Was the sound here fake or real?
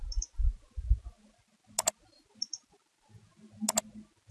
real